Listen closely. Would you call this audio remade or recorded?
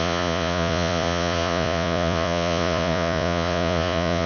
remade